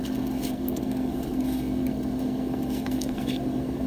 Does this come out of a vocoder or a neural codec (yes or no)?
yes